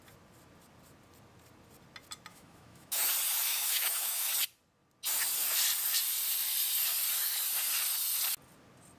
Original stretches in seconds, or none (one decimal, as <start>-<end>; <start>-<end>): 0.0-2.3; 3.1-3.5; 4.3-9.0